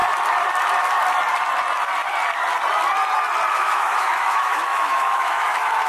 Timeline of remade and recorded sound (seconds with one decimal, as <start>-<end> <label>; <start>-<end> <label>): 0.0-3.5 recorded; 3.5-5.9 remade